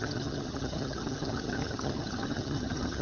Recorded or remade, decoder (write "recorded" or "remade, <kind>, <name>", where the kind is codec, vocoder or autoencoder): remade, vocoder, HiFi-GAN